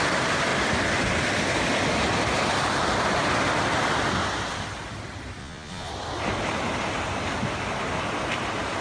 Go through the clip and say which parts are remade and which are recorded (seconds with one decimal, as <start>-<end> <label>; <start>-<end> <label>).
0.0-5.4 recorded; 5.4-5.9 remade; 5.9-8.8 recorded